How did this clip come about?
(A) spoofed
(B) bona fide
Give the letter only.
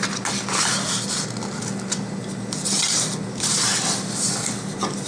B